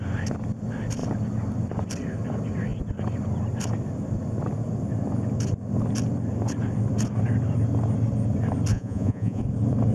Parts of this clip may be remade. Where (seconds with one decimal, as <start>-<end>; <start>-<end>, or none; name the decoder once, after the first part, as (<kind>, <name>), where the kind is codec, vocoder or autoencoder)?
8.7-9.4 (vocoder, Vocos)